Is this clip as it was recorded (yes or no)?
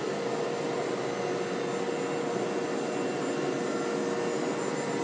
yes